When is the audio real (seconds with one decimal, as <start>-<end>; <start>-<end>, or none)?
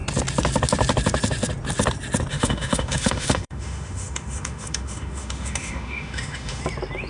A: 0.0-2.3; 6.6-7.1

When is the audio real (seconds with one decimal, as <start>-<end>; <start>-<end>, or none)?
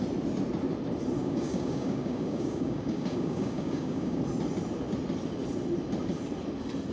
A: 0.0-1.2; 4.2-6.9